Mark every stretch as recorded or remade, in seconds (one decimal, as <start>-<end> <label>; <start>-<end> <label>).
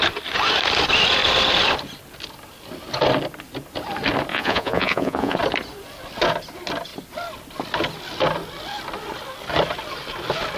0.0-4.3 recorded; 4.3-5.4 remade; 5.4-10.6 recorded